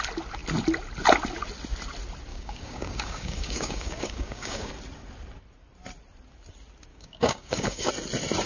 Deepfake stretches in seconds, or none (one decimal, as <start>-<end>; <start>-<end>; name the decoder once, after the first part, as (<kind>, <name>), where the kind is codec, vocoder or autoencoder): 2.3-4.7 (codec, DAC); 6.9-7.9